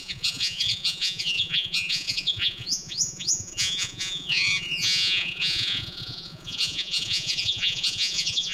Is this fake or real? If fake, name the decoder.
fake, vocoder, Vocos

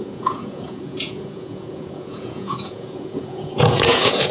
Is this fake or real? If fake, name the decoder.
fake, vocoder, Vocos